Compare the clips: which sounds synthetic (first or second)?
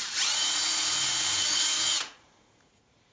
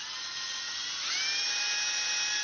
first